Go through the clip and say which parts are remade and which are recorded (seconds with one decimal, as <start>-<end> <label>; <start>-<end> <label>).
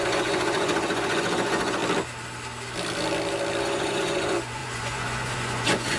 0.0-1.8 remade; 1.8-3.6 recorded; 3.6-6.0 remade